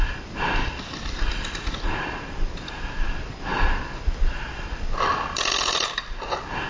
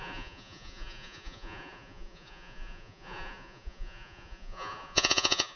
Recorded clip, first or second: first